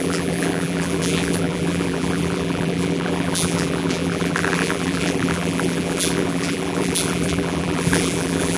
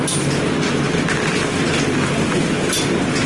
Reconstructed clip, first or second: first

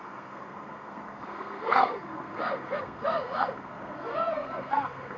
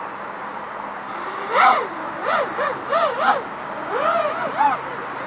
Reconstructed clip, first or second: first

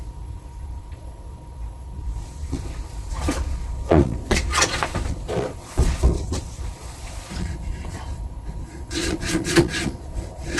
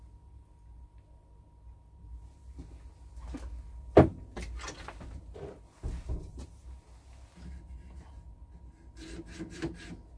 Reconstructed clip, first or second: first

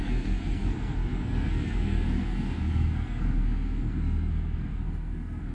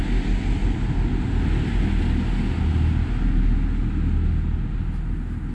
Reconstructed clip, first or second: first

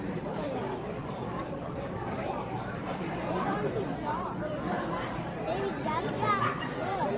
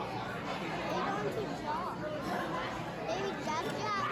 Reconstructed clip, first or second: first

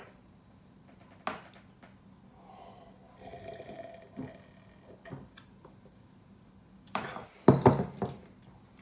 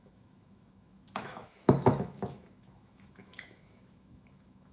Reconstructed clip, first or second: second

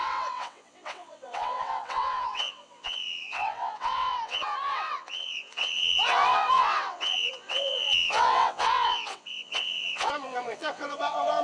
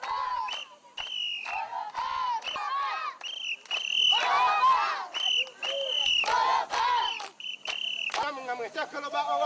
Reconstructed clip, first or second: first